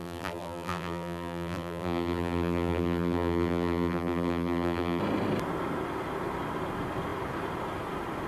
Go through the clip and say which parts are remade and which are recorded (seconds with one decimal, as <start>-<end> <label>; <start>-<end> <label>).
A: 0.0-5.0 remade; 5.0-8.3 recorded